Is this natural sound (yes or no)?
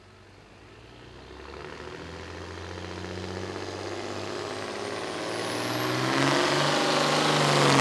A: yes